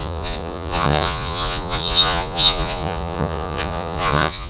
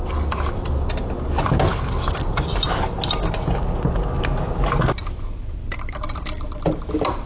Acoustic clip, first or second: second